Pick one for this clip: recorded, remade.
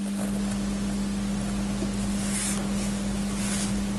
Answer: recorded